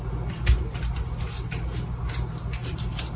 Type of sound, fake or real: real